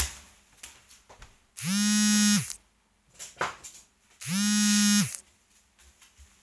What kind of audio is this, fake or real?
real